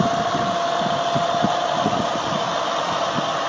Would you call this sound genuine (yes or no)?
yes